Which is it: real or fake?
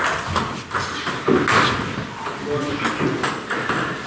real